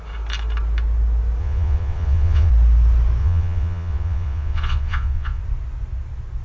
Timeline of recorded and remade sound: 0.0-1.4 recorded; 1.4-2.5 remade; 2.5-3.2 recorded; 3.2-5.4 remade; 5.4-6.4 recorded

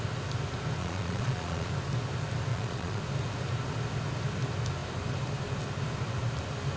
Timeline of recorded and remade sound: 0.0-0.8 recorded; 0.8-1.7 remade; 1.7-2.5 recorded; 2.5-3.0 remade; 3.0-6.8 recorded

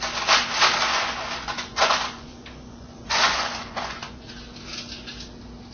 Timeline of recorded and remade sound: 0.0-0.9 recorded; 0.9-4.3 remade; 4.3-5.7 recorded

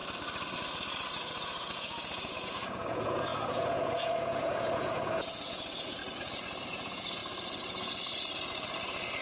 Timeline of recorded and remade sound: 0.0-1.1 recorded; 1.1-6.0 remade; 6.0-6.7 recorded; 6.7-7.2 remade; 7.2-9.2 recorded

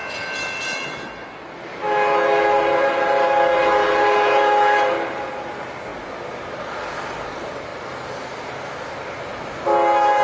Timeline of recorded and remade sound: 0.0-10.2 recorded